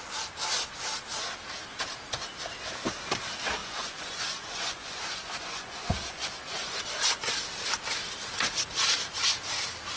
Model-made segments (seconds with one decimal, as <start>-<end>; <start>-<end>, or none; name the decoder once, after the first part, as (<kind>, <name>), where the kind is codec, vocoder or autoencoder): 3.6-6.8 (vocoder, Vocos)